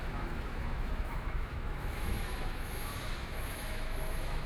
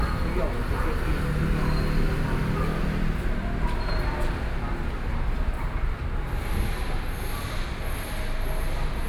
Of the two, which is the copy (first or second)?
first